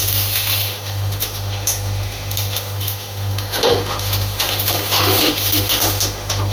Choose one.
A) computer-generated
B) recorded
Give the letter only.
A